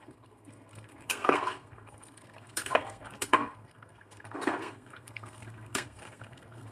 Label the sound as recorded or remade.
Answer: remade